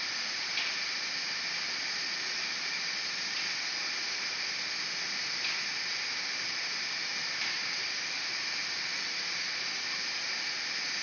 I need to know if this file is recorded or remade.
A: recorded